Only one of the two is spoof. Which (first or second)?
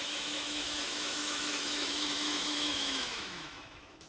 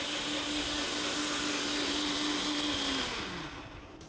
first